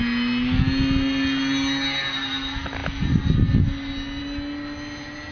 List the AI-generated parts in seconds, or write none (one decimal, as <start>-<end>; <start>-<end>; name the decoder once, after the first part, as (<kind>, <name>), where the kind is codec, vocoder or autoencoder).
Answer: none